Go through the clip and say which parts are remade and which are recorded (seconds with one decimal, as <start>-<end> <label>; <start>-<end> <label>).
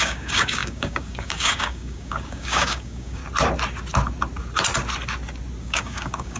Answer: 0.0-3.2 remade; 3.2-5.6 recorded; 5.6-6.4 remade